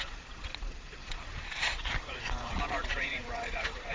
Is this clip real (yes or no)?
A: no